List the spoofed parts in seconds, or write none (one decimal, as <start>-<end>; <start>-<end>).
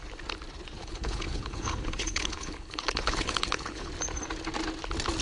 0.8-3.9